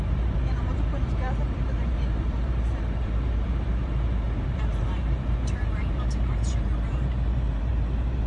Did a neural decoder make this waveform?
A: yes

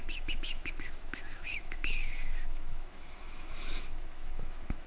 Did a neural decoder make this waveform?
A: yes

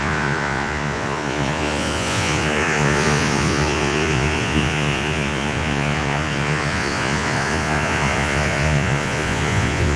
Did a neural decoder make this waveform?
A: yes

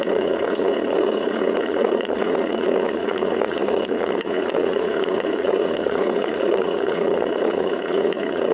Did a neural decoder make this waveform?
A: yes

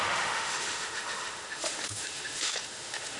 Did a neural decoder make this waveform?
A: yes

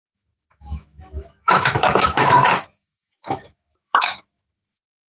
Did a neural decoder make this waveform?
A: yes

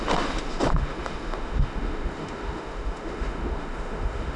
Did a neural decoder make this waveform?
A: yes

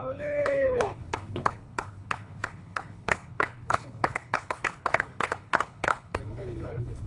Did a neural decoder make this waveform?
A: yes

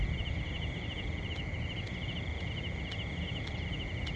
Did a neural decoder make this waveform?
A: no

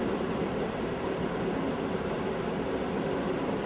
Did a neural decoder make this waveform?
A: no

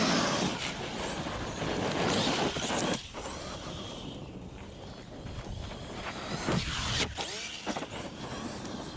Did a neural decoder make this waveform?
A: no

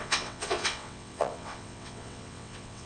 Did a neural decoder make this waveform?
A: yes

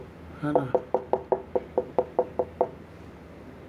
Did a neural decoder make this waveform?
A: no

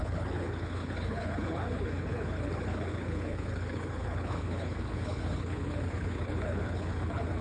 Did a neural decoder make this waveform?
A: yes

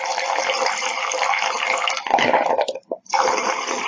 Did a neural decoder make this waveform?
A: no